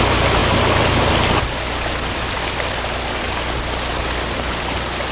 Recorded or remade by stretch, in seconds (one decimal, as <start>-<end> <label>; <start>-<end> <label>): 0.0-5.1 recorded